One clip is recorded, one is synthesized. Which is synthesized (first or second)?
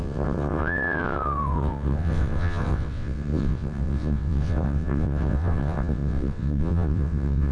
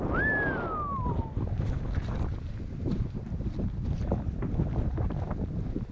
first